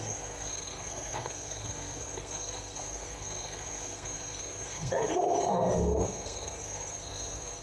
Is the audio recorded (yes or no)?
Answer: no